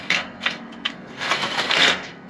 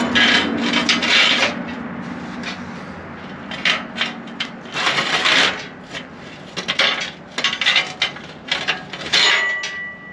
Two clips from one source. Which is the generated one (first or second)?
first